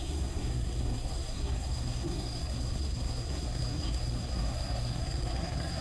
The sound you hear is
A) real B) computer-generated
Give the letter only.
B